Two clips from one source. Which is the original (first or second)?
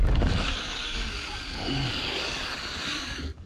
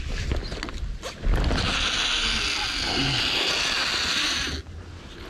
second